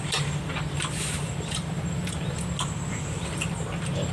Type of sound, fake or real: real